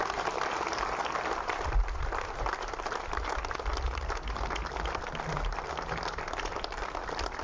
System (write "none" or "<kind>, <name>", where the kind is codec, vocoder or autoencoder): none